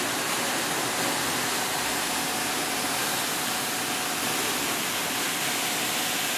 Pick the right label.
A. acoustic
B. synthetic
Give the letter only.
A